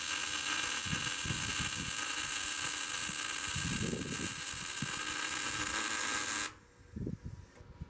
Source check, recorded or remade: recorded